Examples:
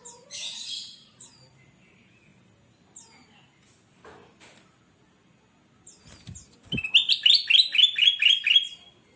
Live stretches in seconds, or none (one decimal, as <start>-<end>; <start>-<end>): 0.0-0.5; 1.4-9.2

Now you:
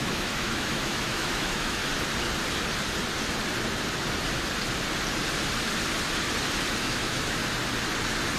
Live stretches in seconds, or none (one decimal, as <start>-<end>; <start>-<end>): 1.8-6.8; 7.4-8.4

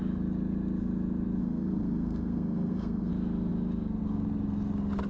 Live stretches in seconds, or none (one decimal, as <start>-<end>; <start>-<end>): 0.0-1.4; 3.1-5.1

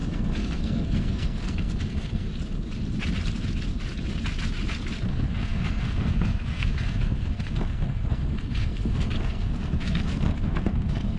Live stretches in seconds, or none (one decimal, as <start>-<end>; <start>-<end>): 2.3-5.0

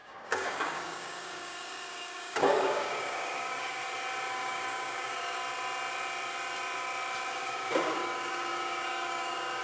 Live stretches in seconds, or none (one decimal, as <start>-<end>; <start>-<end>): 3.8-4.3; 5.4-7.3